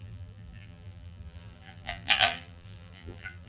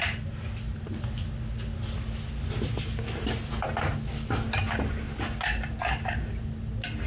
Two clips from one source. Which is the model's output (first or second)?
first